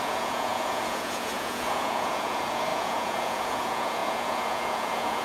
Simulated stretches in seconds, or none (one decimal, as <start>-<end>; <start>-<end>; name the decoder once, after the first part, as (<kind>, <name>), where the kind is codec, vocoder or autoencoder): 0.0-5.2 (vocoder, Vocos)